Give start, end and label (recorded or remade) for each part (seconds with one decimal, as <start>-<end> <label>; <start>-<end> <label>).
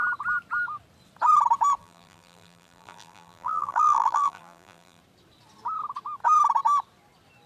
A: 0.0-1.8 recorded; 1.8-5.0 remade; 5.0-7.5 recorded